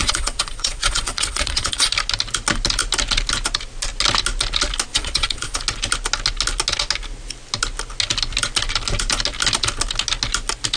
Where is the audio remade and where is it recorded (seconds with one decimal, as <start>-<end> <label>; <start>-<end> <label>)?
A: 0.0-1.9 remade; 1.9-4.9 recorded; 4.9-5.6 remade; 5.6-10.8 recorded